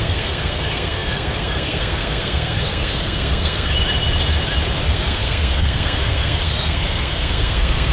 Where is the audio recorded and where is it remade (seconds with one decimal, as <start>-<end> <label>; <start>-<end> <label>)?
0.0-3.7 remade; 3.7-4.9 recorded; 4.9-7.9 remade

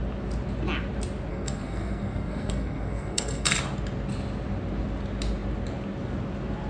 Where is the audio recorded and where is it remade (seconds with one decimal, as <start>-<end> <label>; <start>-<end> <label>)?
0.0-1.3 recorded; 1.3-3.5 remade; 3.5-6.7 recorded

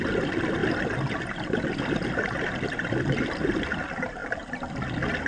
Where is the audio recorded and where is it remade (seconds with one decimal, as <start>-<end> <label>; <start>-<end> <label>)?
0.0-5.3 recorded

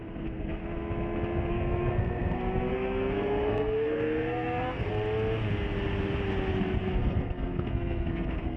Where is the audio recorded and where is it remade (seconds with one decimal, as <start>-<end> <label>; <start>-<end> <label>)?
0.0-0.6 remade; 0.6-1.5 recorded; 1.5-4.9 remade; 4.9-6.5 recorded; 6.5-8.6 remade

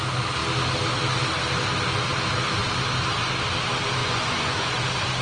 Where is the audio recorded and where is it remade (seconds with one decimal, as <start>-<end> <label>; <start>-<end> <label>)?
0.0-4.0 recorded; 4.0-4.8 remade; 4.8-5.2 recorded